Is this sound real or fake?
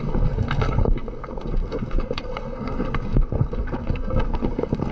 fake